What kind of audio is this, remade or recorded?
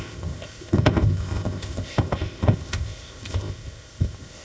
remade